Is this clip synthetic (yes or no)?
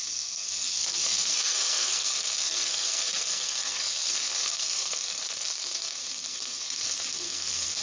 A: yes